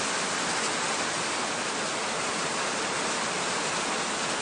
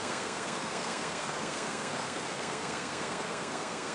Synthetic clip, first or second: second